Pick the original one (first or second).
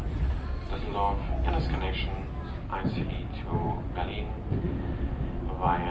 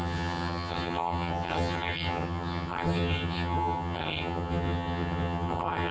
first